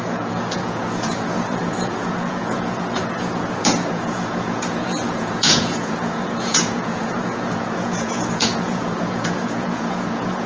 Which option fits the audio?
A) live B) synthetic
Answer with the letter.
B